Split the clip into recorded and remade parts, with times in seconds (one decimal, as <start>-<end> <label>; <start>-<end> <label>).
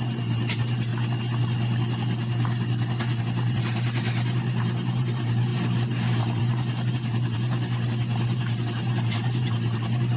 0.0-0.9 remade; 0.9-3.2 recorded; 3.2-10.2 remade